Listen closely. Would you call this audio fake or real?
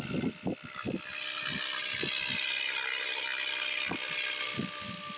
real